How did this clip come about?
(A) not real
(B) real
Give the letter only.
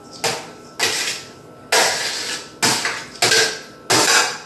B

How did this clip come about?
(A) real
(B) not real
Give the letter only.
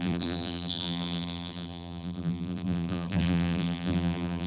B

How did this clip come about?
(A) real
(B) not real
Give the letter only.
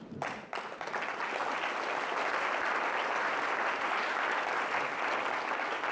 A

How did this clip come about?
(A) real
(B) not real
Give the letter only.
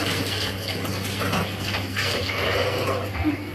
B